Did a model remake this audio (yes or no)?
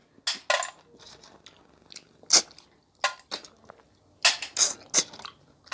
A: no